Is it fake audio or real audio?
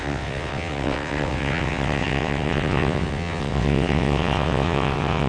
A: fake